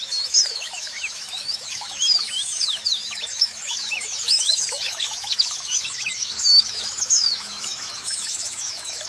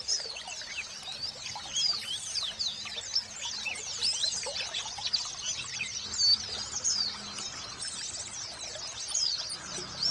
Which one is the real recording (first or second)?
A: second